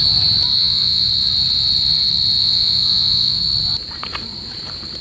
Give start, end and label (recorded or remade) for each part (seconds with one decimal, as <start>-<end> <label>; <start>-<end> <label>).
0.0-0.6 recorded; 0.6-1.1 remade; 1.1-2.4 recorded; 2.4-3.4 remade; 3.4-5.0 recorded